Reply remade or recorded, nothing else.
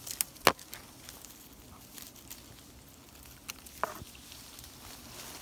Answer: recorded